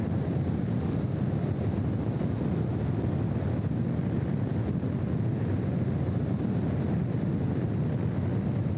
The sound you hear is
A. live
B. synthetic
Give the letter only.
A